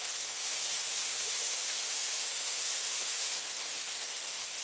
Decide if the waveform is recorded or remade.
remade